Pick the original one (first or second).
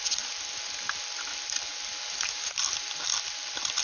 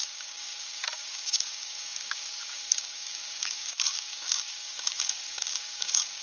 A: first